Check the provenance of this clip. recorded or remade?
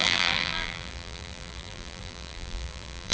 remade